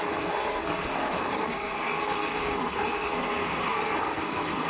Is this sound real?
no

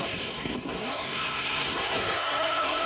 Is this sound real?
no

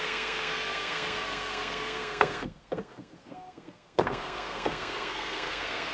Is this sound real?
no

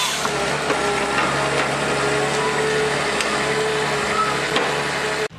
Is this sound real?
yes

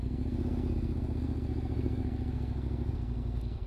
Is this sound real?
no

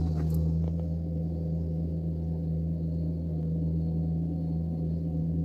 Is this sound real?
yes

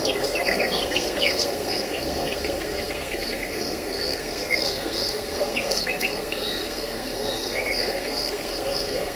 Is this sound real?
no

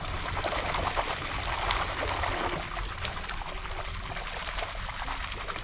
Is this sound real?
yes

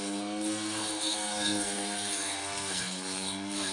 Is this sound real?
no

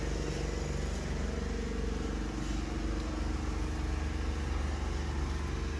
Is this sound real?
yes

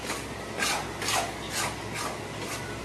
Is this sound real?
yes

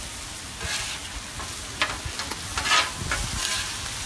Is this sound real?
yes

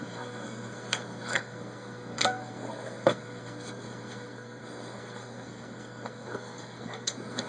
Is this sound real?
no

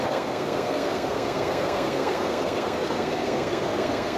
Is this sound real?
no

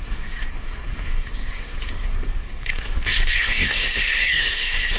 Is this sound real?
no